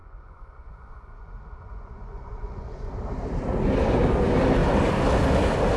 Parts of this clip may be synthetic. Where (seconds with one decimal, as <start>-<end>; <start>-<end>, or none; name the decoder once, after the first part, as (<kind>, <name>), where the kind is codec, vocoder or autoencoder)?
0.0-2.9 (vocoder, Vocos)